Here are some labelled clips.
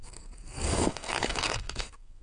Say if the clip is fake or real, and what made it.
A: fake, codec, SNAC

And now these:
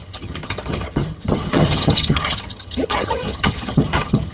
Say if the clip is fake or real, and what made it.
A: fake, vocoder, HiFi-GAN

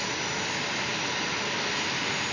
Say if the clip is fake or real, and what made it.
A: real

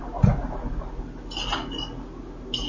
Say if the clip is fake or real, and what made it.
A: real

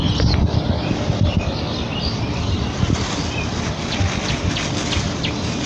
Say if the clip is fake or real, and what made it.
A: real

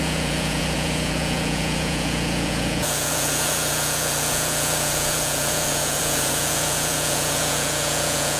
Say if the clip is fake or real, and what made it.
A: fake, vocoder, Vocos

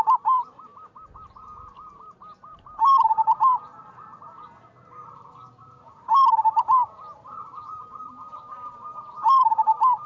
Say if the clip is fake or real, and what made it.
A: fake, vocoder, BigVGAN v2